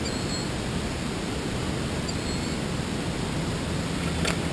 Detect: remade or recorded recorded